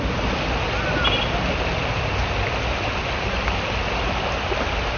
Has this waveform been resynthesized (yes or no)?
no